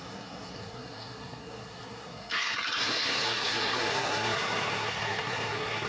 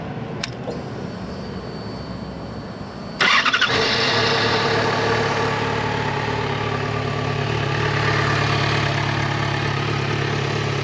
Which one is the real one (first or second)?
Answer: second